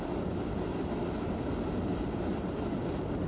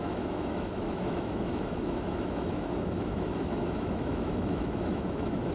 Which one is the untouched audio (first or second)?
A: first